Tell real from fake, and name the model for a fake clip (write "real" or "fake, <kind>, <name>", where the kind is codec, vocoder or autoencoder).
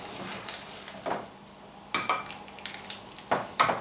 real